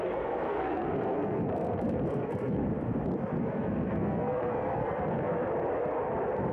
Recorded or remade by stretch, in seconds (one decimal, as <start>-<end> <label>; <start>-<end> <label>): 0.0-2.6 remade; 2.6-3.4 recorded; 3.4-5.4 remade; 5.4-6.5 recorded